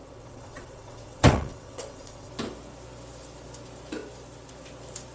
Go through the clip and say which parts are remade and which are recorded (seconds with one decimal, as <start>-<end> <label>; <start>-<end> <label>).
0.0-2.3 remade; 2.3-5.1 recorded